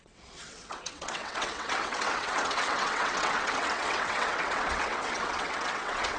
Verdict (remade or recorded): remade